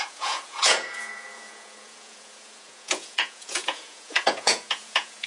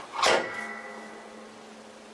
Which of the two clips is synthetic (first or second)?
first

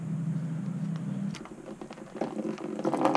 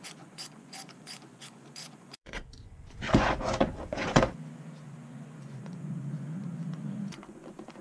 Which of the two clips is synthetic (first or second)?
second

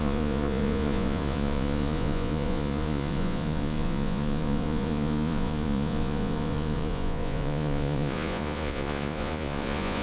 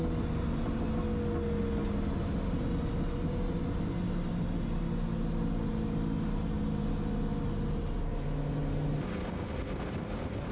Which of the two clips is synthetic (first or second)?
first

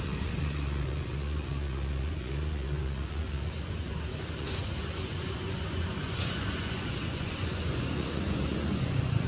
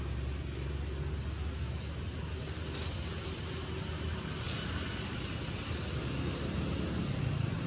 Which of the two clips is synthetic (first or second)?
first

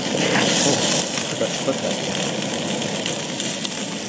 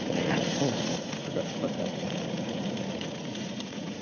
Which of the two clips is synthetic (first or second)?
second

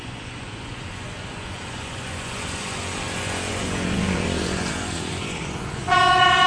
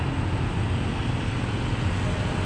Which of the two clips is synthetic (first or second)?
first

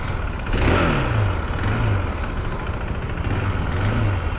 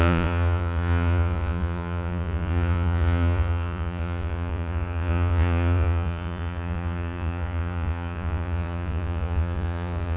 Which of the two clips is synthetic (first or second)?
second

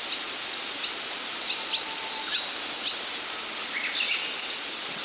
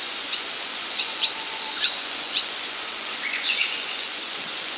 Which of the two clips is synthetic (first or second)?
second